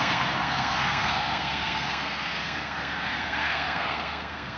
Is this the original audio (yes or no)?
no